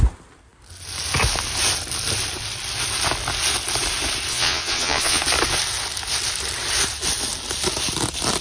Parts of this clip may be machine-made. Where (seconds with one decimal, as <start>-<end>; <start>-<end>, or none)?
4.3-5.2